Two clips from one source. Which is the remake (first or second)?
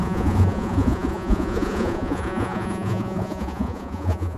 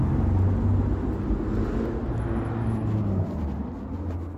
first